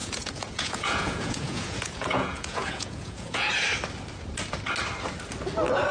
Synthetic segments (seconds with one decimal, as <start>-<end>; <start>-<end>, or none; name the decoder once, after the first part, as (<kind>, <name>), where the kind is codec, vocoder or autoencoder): 0.0-3.5 (vocoder, Vocos)